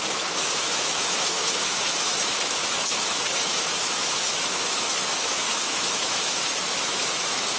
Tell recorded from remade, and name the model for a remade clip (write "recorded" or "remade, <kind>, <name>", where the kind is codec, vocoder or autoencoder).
remade, autoencoder, DAC-VAE